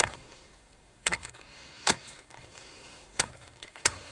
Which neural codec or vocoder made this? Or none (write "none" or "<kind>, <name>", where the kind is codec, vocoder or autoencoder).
codec, SNAC